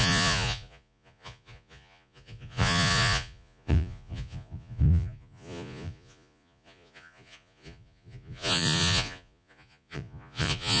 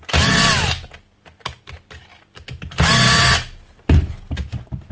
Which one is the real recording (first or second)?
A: second